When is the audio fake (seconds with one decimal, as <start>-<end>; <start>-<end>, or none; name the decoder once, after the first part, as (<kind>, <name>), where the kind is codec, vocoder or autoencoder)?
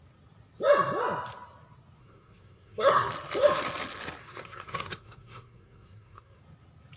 2.0-3.1 (codec, SNAC); 4.2-6.4